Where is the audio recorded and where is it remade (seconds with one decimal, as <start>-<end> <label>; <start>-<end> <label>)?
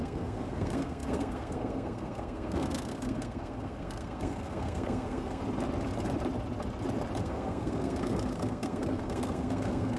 0.0-5.4 remade; 5.4-7.2 recorded; 7.2-10.0 remade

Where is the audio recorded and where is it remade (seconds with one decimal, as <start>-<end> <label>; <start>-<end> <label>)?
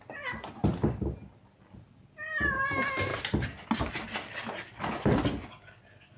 0.0-6.2 recorded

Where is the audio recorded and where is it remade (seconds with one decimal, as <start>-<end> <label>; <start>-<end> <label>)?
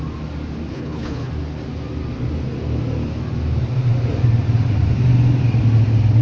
0.0-0.7 recorded; 0.7-1.3 remade; 1.3-6.2 recorded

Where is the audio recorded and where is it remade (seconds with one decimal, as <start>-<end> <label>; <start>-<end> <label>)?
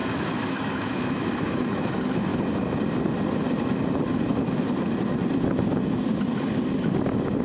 0.0-1.9 remade; 1.9-7.4 recorded